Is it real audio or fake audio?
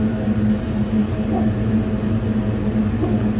real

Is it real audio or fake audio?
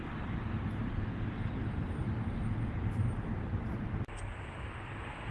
real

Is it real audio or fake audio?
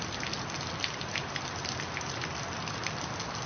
real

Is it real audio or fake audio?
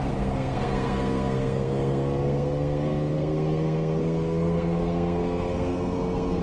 fake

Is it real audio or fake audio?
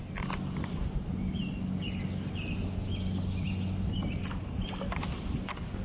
real